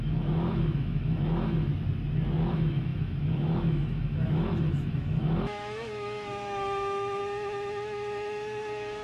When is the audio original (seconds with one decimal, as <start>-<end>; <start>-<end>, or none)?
1.7-2.5